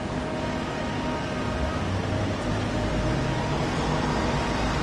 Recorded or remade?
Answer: remade